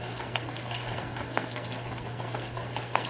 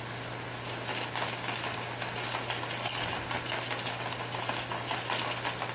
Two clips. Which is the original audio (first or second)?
second